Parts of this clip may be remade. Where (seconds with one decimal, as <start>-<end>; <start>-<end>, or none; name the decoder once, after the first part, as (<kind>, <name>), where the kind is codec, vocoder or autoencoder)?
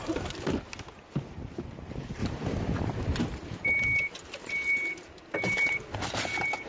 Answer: none